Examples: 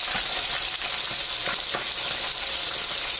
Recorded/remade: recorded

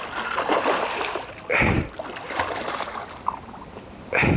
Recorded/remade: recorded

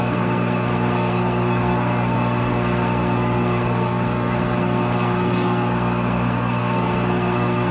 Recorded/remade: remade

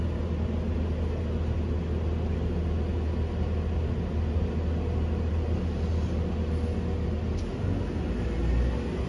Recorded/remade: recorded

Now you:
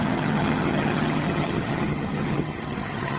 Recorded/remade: remade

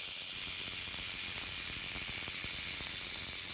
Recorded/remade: recorded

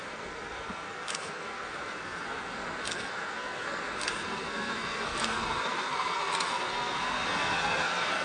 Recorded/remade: remade